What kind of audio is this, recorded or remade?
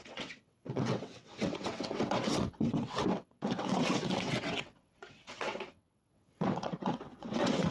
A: remade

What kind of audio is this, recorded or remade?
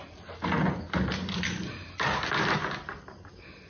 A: recorded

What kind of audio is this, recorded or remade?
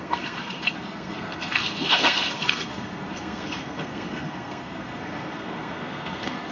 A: remade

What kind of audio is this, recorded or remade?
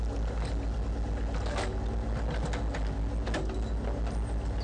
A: recorded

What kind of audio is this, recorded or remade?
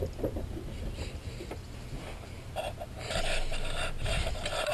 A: recorded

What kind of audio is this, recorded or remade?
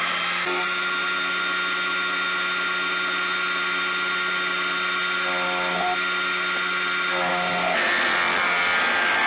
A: recorded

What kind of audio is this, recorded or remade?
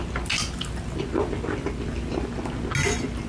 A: recorded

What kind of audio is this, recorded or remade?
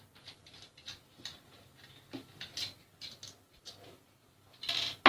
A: recorded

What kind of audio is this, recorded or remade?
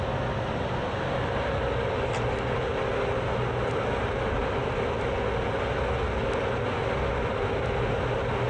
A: recorded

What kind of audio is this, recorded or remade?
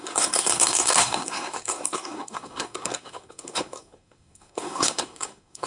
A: remade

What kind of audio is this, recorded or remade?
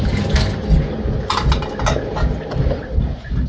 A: recorded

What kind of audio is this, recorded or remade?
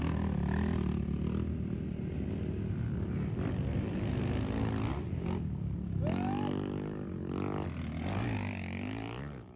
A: recorded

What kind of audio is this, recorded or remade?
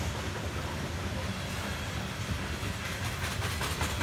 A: recorded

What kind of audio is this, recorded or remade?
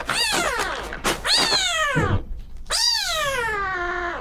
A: recorded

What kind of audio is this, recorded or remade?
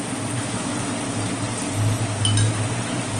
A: recorded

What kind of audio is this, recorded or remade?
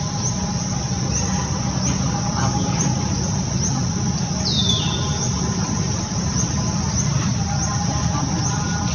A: remade